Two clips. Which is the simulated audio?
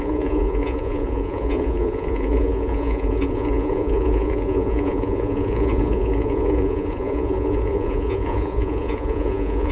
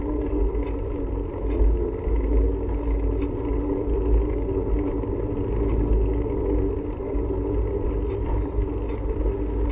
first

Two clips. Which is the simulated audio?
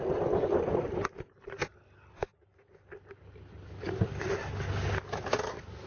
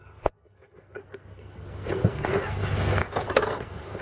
second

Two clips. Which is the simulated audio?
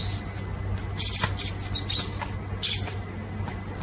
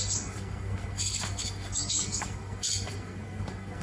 second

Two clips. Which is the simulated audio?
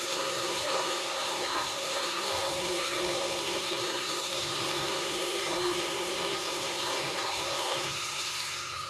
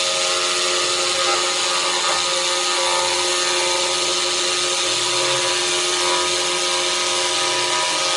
first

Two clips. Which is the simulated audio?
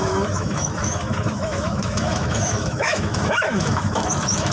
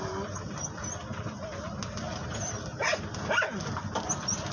first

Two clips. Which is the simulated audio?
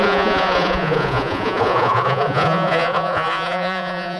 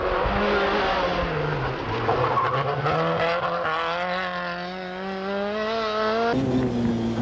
first